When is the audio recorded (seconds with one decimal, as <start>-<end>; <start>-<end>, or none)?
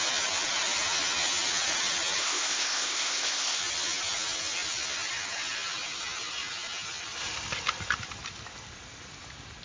0.0-2.2; 3.6-9.6